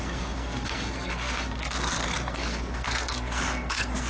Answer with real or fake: fake